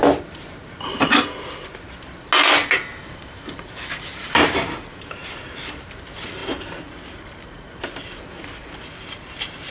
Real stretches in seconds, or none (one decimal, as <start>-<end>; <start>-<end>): 0.0-2.6; 6.0-6.4; 7.2-9.7